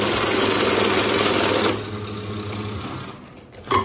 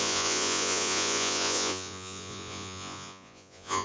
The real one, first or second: first